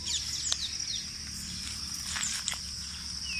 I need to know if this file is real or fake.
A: real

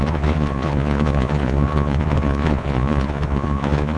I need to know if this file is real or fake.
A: fake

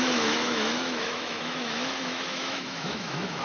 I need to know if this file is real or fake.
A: fake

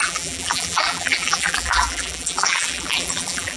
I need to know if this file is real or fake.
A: fake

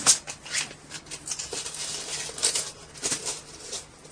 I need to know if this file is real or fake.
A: real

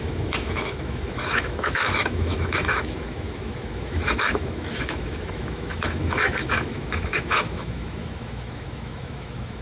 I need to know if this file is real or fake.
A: fake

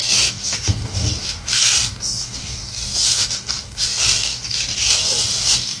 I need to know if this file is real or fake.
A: fake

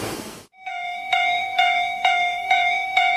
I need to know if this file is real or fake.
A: fake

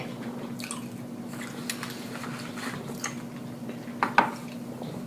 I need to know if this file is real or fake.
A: real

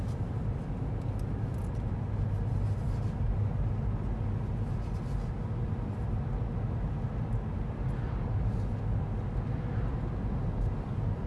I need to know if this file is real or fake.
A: real